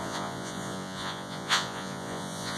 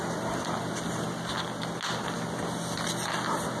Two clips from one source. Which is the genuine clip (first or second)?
second